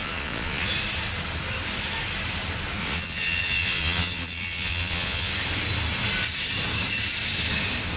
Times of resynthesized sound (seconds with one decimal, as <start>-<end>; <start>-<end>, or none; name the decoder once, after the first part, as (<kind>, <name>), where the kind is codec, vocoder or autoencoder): 0.0-0.7 (vocoder, Vocos); 2.8-5.3